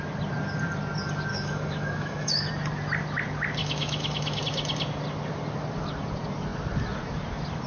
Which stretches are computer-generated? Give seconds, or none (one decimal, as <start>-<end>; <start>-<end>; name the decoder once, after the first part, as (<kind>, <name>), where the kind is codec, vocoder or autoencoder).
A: 1.3-2.5 (autoencoder, DAC-VAE); 3.6-4.4